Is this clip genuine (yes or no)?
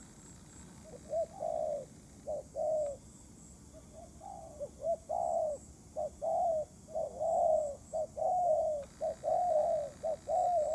yes